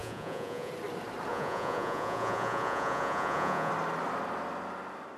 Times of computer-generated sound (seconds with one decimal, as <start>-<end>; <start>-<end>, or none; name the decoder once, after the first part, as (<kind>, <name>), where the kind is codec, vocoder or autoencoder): 0.0-0.7 (vocoder, Vocos); 1.3-3.7